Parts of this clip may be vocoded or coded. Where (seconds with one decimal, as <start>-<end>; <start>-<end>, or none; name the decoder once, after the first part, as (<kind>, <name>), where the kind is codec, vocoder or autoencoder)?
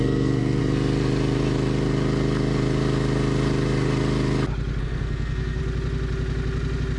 0.0-0.6 (codec, SNAC); 4.8-5.6